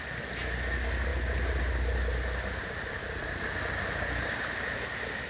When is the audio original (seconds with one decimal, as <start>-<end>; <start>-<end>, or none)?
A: 0.0-1.1; 4.3-5.3